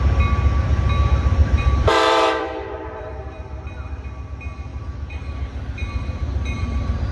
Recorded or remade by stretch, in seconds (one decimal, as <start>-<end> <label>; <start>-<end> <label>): 0.0-1.4 recorded; 1.4-3.1 remade; 3.1-4.7 recorded; 4.7-7.1 remade

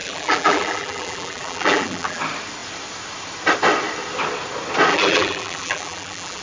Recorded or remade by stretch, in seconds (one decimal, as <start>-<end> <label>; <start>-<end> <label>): 0.0-2.2 remade; 2.2-4.9 recorded; 4.9-6.4 remade